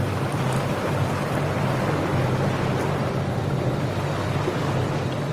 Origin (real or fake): real